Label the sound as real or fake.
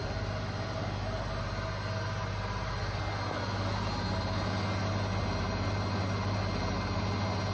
real